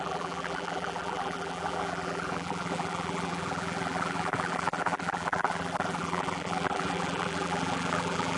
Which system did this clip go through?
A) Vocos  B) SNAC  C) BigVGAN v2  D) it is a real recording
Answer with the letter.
C